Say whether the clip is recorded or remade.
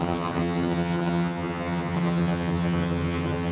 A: remade